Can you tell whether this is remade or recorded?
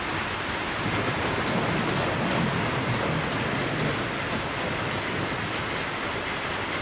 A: recorded